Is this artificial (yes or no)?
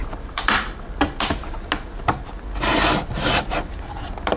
no